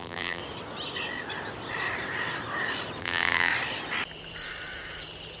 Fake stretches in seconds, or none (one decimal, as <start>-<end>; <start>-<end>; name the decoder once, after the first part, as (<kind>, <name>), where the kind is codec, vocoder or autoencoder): 0.0-0.4 (vocoder, BigVGAN v2); 3.0-3.5